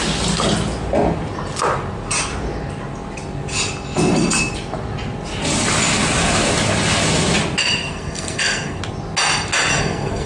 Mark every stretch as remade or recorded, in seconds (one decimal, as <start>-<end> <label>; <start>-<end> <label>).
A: 0.0-7.6 recorded; 7.6-8.8 remade; 8.8-9.7 recorded; 9.7-10.3 remade